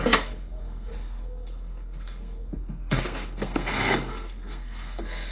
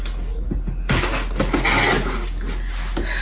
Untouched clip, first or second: second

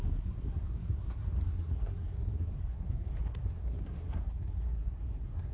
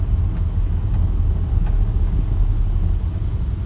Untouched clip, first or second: second